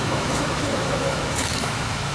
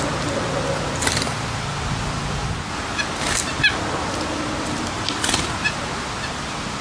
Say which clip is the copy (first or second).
first